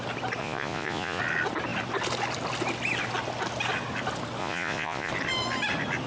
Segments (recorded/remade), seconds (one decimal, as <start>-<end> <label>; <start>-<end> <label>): 0.0-0.4 recorded; 0.4-1.2 remade; 1.2-4.4 recorded; 4.4-5.1 remade; 5.1-6.1 recorded